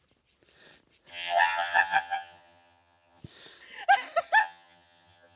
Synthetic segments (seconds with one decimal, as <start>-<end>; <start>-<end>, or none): 1.1-3.2; 4.4-5.4